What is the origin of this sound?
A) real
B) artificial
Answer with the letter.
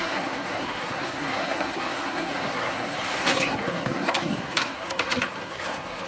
B